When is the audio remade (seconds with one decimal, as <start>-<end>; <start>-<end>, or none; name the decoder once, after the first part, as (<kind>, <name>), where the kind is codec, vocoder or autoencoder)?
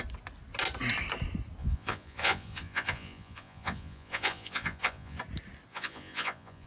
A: 1.6-5.2 (vocoder, Vocos); 5.7-6.7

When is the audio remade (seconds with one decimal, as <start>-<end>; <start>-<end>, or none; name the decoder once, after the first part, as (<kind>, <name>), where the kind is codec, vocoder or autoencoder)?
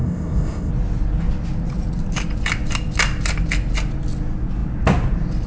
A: 0.0-0.7 (codec, ZipCodec)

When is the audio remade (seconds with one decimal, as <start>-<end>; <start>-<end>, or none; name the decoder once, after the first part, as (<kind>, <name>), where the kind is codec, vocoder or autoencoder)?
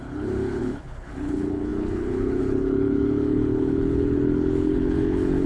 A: 0.0-5.5 (codec, HILCodec)